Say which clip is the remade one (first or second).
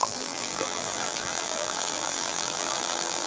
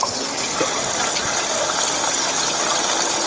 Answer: first